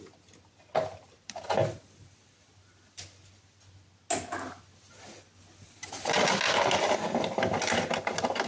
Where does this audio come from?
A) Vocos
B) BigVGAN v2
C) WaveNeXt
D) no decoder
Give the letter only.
D